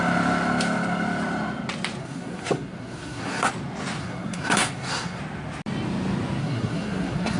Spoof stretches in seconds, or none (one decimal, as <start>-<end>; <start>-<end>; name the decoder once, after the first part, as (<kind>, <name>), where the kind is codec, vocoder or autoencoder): 2.0-3.5 (codec, SNAC); 4.0-5.2; 6.4-7.4